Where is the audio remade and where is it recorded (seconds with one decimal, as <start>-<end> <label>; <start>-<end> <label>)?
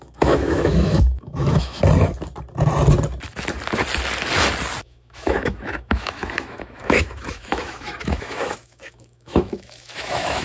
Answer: 0.0-1.8 remade; 1.8-4.8 recorded; 4.8-10.4 remade